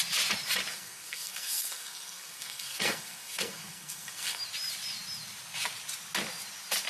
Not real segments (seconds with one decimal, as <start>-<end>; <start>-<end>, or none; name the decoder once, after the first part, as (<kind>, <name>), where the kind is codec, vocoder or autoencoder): 0.7-4.4 (codec, SNAC)